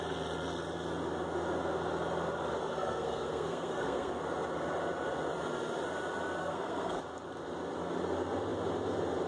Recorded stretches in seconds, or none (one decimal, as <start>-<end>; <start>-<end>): 0.0-2.6; 4.1-6.4; 7.0-9.3